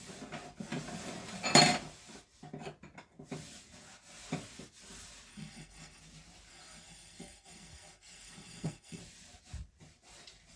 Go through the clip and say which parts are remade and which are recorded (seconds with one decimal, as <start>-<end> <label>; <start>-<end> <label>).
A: 0.0-5.3 recorded; 5.3-6.0 remade; 6.0-6.5 recorded; 6.5-9.0 remade; 9.0-10.6 recorded